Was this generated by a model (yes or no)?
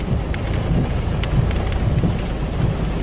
yes